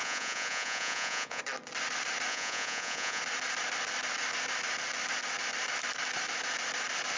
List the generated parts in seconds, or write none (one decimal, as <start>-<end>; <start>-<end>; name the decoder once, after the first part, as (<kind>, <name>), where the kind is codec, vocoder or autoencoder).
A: 0.0-1.4 (vocoder, Vocos); 2.3-3.2